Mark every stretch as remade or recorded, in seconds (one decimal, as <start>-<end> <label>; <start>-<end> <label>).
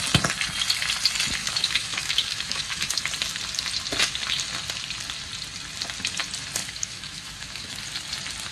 0.0-1.4 recorded; 1.4-3.0 remade; 3.0-6.6 recorded; 6.6-7.8 remade; 7.8-8.5 recorded